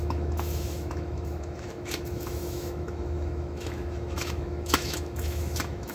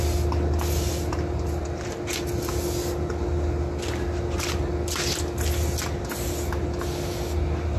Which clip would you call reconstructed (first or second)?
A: first